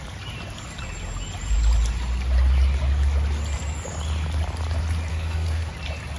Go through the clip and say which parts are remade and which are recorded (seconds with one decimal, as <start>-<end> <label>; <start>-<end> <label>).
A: 0.0-5.1 recorded; 5.1-5.7 remade; 5.7-6.2 recorded

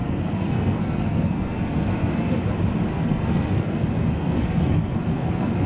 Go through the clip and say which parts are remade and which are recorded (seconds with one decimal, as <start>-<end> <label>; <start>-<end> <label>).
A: 0.0-2.4 remade; 2.4-2.9 recorded; 2.9-5.7 remade